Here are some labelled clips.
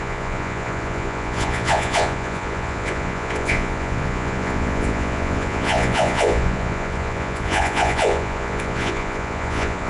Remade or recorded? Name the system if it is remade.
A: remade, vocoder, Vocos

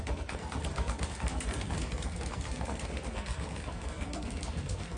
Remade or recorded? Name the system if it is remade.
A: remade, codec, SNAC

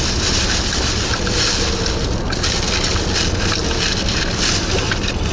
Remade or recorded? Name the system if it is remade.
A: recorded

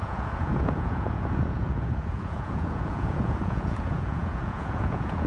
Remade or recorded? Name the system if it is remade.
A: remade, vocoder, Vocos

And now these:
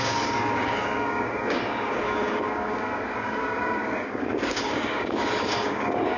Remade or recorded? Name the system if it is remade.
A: remade, codec, DAC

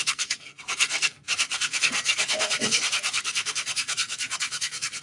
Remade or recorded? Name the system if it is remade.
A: remade, codec, SNAC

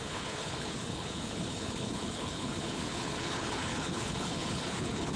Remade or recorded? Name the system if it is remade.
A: remade, codec, HILCodec